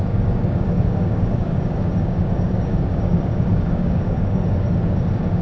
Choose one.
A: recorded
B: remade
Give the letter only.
B